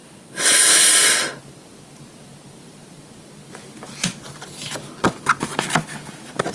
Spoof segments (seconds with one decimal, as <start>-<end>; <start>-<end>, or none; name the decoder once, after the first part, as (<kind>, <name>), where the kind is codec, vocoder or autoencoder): none